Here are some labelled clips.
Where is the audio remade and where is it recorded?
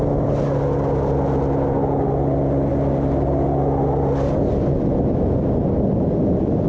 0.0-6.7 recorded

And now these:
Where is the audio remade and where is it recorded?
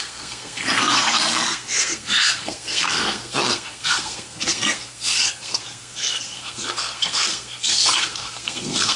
0.0-9.0 remade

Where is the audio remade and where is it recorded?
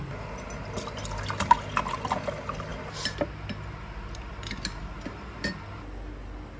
0.0-6.6 recorded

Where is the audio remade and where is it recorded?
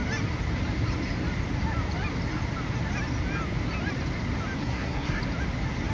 0.0-4.6 recorded; 4.6-5.2 remade; 5.2-5.9 recorded